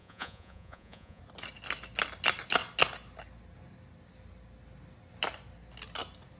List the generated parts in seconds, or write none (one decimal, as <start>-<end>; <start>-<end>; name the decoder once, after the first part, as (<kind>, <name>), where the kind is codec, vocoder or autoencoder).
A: 0.0-1.2 (vocoder, Vocos)